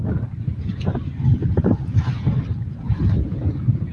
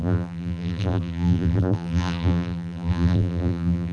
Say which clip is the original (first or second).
first